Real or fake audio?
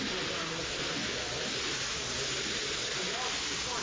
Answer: real